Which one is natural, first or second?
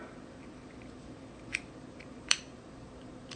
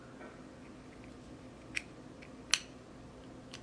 second